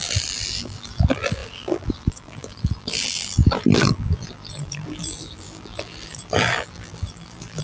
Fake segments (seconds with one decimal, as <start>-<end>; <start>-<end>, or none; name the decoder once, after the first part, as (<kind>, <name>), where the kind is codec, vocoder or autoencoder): 0.0-7.6 (vocoder, BigVGAN v2)